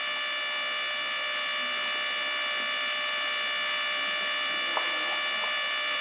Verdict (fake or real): real